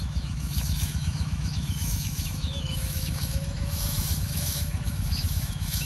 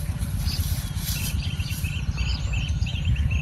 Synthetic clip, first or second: first